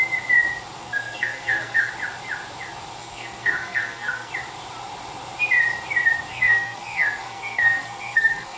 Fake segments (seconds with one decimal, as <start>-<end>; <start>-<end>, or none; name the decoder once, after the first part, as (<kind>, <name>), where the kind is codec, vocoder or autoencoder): 0.8-1.9 (codec, SNAC); 3.0-4.3; 6.3-8.6